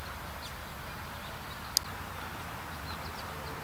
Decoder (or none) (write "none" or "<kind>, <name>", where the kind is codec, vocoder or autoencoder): none